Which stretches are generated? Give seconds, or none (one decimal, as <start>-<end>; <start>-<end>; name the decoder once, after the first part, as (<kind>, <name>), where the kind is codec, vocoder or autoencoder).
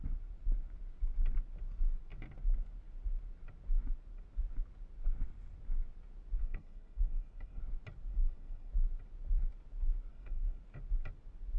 6.4-7.6 (codec, SNAC); 8.1-8.7; 10.1-10.6